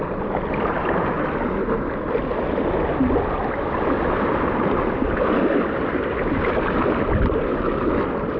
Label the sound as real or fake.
real